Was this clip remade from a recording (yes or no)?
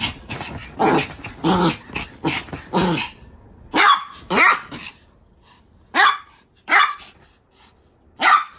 no